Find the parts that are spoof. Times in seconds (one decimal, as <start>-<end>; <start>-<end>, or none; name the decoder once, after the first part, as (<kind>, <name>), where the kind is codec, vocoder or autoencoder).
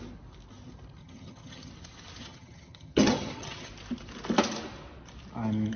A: 1.0-1.7 (vocoder, HiFi-GAN); 2.2-3.7